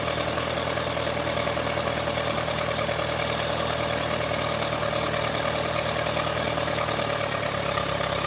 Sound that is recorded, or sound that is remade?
recorded